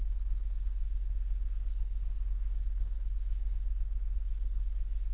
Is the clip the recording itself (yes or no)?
no